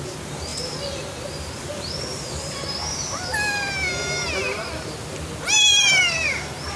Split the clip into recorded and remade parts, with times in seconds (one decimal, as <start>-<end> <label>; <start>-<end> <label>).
0.0-6.8 recorded